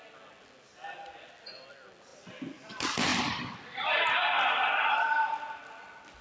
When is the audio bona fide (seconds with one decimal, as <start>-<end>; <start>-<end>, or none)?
0.0-6.2